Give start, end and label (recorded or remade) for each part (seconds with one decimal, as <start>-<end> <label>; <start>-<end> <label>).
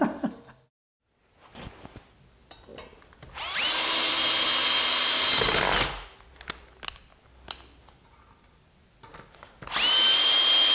0.0-10.7 recorded